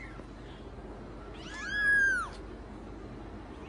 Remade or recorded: recorded